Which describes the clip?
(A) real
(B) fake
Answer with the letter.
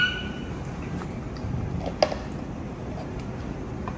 A